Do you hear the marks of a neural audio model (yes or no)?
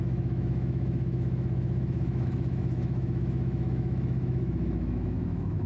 yes